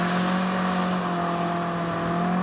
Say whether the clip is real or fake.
real